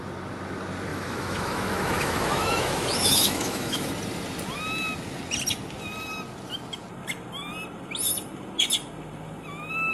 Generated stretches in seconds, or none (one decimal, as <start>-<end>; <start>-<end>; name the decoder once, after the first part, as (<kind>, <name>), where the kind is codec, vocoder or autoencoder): 0.9-3.9 (autoencoder, DAC-VAE)